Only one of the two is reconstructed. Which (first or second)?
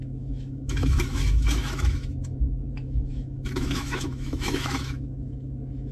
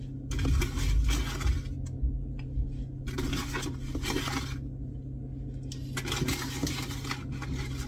first